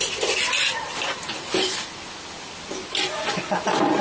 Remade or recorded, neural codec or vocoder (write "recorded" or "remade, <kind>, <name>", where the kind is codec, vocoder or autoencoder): remade, vocoder, BigVGAN v2